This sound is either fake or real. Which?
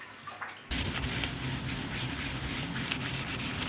real